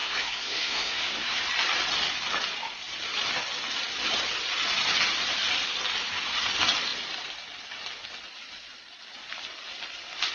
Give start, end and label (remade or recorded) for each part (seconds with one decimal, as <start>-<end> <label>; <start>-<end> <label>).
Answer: 0.0-1.4 remade; 1.4-10.3 recorded